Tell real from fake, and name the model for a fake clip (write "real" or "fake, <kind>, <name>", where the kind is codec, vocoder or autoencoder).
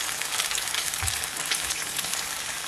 fake, codec, DAC